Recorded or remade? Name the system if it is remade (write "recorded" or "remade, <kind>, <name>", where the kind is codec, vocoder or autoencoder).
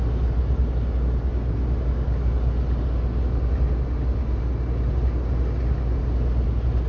recorded